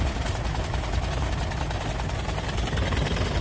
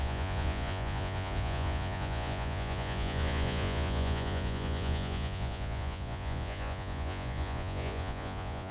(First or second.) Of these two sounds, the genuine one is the first